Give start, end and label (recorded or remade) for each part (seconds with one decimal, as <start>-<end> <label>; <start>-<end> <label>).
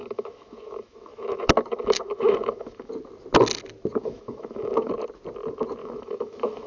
0.0-2.9 remade; 2.9-4.0 recorded; 4.0-4.9 remade; 4.9-5.8 recorded; 5.8-6.7 remade